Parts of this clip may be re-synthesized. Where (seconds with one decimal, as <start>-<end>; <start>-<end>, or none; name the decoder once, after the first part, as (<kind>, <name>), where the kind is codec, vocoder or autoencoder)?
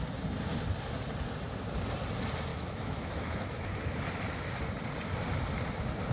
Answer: 2.5-3.7 (autoencoder, DAC-VAE)